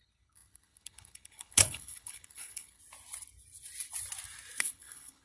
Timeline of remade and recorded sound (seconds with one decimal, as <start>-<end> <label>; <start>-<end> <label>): 0.0-2.8 remade; 2.8-4.6 recorded; 4.6-5.2 remade